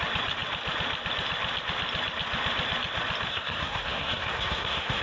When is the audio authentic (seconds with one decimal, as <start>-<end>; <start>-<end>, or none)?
0.0-3.3